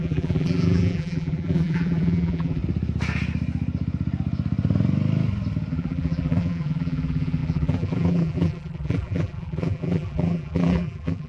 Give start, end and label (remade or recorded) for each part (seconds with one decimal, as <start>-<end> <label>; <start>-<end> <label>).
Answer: 0.0-2.6 remade; 2.6-5.7 recorded; 5.7-11.3 remade